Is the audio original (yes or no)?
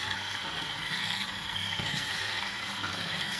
no